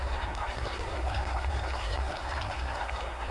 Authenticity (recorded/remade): remade